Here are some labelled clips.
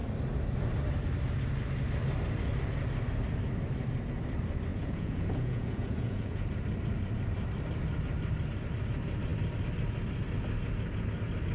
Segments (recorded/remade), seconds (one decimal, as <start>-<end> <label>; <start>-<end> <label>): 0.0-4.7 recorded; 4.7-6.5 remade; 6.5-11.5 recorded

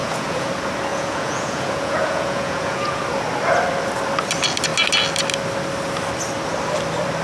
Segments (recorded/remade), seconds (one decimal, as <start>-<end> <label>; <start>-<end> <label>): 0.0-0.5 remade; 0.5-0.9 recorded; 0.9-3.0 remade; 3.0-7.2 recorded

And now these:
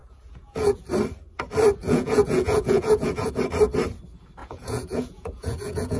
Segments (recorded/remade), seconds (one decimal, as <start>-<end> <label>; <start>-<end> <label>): 0.0-0.8 remade; 0.8-1.8 recorded; 1.8-3.3 remade; 3.3-4.4 recorded; 4.4-6.0 remade

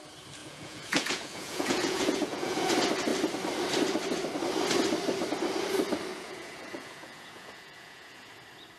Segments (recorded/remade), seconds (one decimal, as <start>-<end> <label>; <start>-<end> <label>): 0.0-0.4 recorded; 0.4-2.7 remade; 2.7-6.1 recorded; 6.1-8.3 remade; 8.3-8.8 recorded